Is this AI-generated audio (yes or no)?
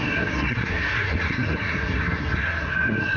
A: yes